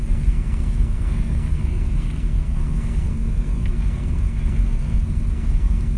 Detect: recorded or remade remade